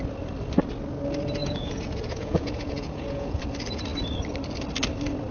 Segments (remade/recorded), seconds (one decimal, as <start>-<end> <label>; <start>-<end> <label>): 0.0-1.4 recorded; 1.4-3.4 remade; 3.4-5.3 recorded